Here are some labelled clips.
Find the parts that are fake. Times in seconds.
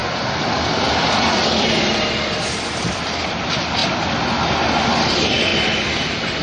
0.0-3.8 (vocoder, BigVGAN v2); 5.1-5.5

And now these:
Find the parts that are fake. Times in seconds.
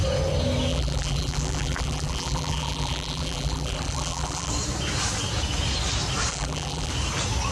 0.7-4.5 (vocoder, BigVGAN v2); 6.3-6.9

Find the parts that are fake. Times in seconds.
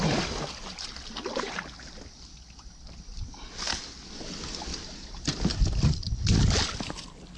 0.7-1.5 (vocoder, BigVGAN v2); 4.7-5.3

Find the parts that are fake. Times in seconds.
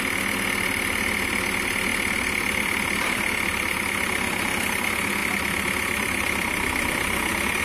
1.9-3.8 (vocoder, BigVGAN v2); 5.2-7.6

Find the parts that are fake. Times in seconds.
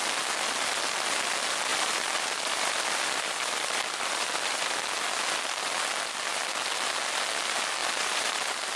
1.7-4.8 (vocoder, BigVGAN v2); 7.8-8.3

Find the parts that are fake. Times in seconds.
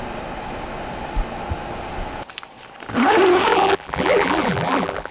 3.5-5.1 (vocoder, BigVGAN v2)